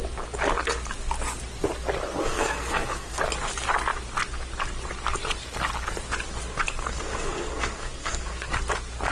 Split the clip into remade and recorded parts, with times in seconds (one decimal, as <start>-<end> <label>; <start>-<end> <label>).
0.0-2.2 recorded; 2.2-3.2 remade; 3.2-6.8 recorded; 6.8-8.6 remade; 8.6-9.1 recorded